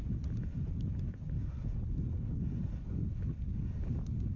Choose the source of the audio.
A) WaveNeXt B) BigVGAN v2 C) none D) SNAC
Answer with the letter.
C